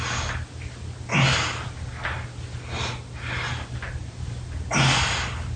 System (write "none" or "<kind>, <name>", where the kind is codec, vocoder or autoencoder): none